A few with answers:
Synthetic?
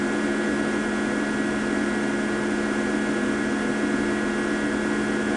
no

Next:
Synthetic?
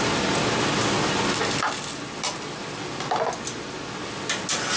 no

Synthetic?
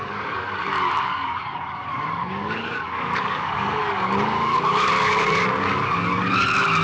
yes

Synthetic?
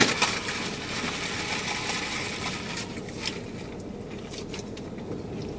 no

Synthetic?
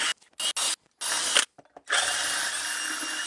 no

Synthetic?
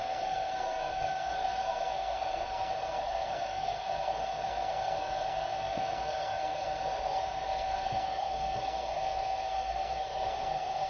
yes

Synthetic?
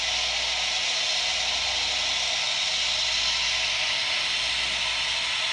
no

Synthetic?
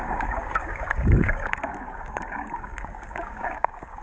yes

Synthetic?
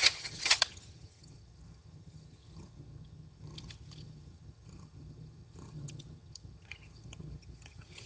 yes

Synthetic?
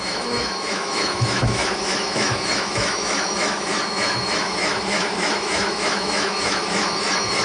yes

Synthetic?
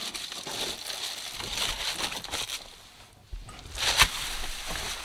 no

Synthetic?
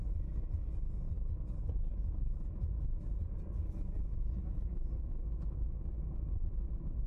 no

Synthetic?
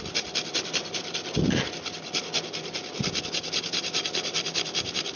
no